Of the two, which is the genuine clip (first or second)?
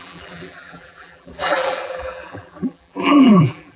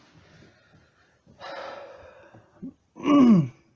second